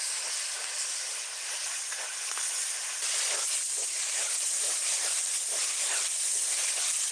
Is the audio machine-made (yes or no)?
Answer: yes